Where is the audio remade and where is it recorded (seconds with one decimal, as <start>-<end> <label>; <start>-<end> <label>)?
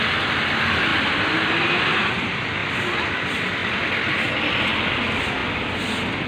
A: 0.0-6.3 remade